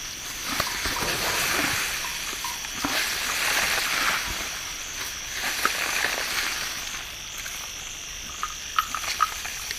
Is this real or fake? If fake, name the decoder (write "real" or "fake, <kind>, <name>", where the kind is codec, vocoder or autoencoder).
real